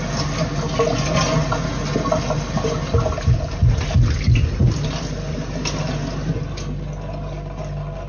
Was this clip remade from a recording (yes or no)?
no